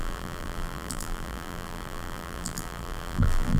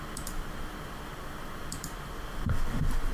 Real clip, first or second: second